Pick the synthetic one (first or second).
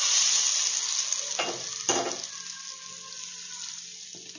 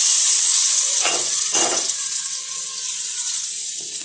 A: second